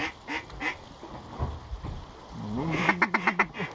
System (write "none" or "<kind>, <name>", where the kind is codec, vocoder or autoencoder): none